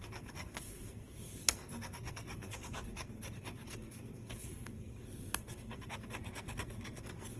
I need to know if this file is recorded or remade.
remade